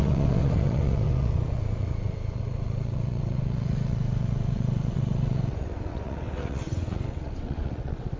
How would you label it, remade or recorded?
remade